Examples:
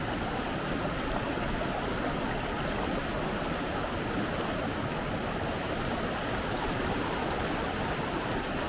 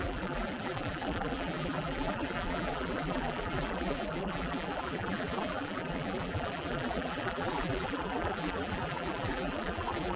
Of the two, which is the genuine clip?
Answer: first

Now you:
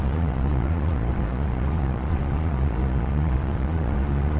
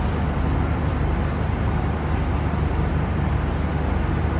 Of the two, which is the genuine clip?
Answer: second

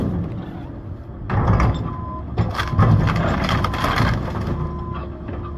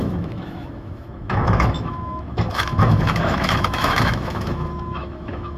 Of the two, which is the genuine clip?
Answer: first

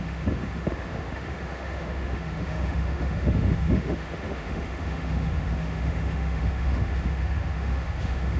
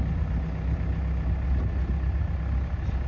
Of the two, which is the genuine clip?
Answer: second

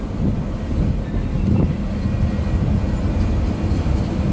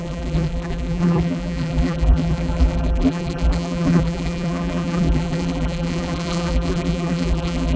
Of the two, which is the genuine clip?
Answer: first